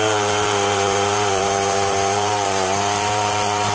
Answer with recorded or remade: remade